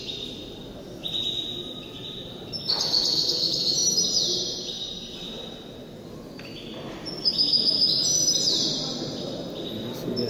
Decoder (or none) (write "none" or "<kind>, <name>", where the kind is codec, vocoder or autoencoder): none